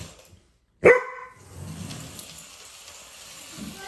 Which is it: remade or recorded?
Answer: recorded